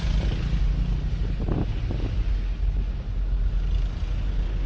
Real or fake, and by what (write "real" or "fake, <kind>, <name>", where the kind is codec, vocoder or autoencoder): real